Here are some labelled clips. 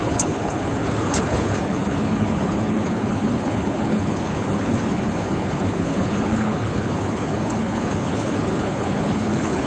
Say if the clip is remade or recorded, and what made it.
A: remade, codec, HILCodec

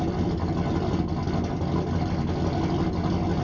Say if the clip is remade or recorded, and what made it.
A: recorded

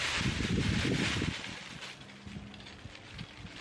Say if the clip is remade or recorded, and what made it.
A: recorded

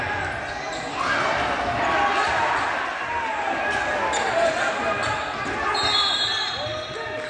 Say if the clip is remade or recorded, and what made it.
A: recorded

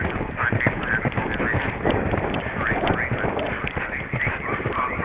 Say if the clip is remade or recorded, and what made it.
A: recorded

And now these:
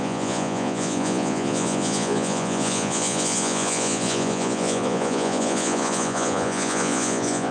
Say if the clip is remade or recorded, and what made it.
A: remade, vocoder, Vocos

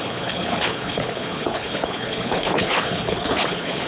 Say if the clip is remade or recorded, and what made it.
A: remade, codec, HILCodec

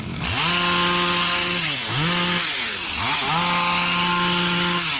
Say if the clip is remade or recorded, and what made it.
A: recorded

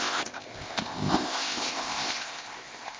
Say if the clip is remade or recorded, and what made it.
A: remade, codec, ZipCodec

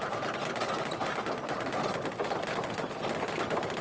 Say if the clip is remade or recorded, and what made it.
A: recorded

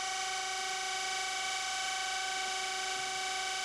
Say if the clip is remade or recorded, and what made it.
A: recorded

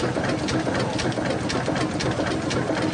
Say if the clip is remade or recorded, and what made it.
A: recorded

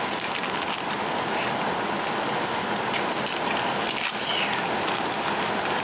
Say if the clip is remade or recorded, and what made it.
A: recorded